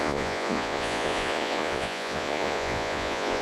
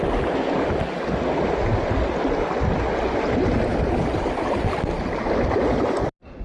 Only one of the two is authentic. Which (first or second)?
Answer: second